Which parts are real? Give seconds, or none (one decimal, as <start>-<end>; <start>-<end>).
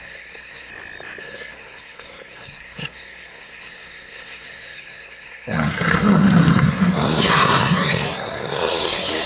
0.7-1.2